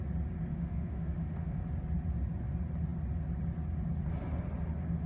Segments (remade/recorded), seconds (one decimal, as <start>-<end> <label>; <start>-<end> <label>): 0.0-0.5 recorded; 0.5-1.6 remade; 1.6-5.1 recorded